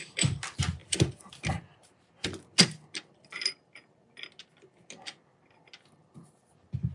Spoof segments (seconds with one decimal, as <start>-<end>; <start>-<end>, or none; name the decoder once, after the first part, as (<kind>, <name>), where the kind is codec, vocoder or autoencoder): 0.8-1.3 (vocoder, BigVGAN v2)